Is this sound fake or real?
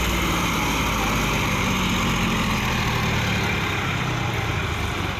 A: real